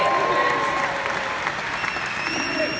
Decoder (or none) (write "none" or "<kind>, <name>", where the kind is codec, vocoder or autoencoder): none